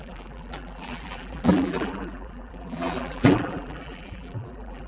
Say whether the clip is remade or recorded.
remade